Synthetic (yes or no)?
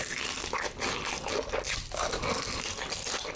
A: no